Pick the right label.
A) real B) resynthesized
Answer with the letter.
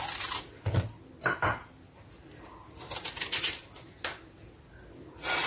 A